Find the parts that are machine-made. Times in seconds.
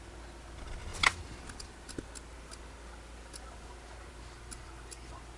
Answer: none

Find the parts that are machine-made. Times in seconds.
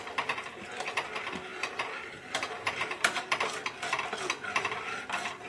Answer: 1.5-3.2 (vocoder, BigVGAN v2)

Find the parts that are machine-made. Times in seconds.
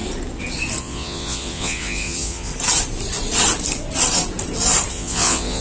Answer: 0.8-2.5 (vocoder, Vocos); 4.9-5.6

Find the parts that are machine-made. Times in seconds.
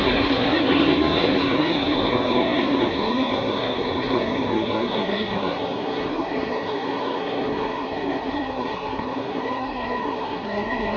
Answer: 0.0-11.0 (codec, SNAC)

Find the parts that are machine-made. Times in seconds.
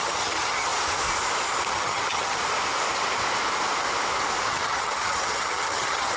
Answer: 0.0-0.7 (vocoder, HiFi-GAN); 1.7-2.4; 4.5-6.2